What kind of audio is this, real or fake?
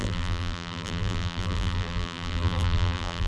fake